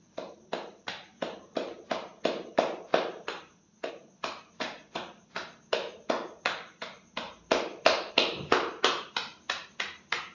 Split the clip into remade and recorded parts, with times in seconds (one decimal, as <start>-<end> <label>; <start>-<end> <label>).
0.0-5.3 remade; 5.3-8.1 recorded; 8.1-10.3 remade